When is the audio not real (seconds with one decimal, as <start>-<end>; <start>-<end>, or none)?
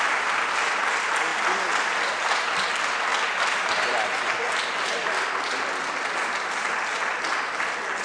none